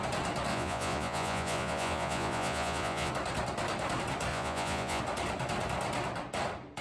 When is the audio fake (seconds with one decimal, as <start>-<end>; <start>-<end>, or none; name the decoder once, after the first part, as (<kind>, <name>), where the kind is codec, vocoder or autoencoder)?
0.5-3.1 (vocoder, Vocos); 4.3-5.0